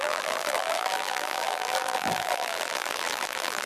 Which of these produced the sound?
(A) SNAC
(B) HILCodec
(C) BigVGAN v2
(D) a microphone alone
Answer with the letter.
C